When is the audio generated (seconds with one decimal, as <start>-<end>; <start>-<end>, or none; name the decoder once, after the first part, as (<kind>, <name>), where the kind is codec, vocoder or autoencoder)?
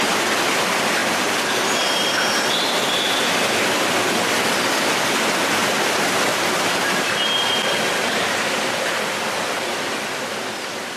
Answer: 1.0-1.6 (vocoder, BigVGAN v2); 6.3-7.2